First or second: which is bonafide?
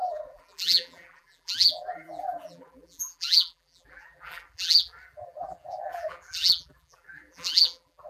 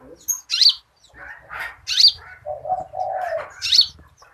second